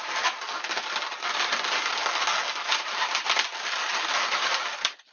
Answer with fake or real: real